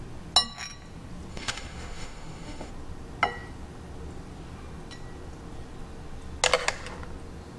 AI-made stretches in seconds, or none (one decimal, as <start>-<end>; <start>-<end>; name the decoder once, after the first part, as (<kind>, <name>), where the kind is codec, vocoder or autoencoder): 1.3-2.7 (autoencoder, DAC-VAE)